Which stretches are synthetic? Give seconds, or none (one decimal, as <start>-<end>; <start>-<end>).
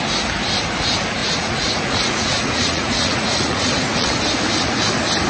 1.2-4.1